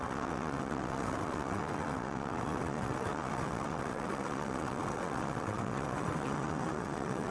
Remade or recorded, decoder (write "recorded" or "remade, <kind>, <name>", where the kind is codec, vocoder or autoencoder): remade, vocoder, WaveNeXt